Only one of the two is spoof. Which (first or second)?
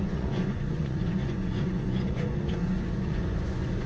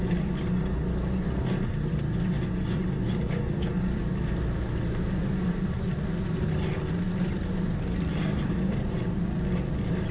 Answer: first